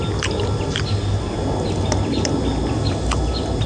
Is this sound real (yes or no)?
yes